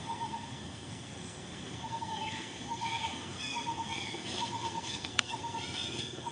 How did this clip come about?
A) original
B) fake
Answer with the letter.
B